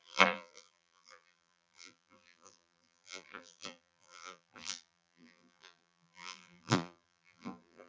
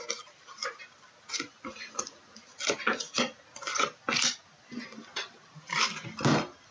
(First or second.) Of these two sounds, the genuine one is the second